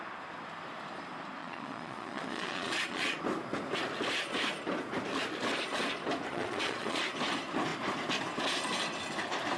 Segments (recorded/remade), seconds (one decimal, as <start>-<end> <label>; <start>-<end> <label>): 0.0-1.4 recorded; 1.4-3.2 remade; 3.2-6.3 recorded; 6.3-7.0 remade; 7.0-9.6 recorded